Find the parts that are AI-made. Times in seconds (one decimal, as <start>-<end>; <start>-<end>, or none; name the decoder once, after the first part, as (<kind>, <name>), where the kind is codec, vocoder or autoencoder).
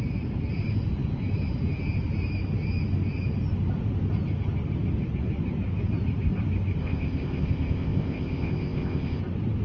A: 6.8-9.2 (codec, ZipCodec)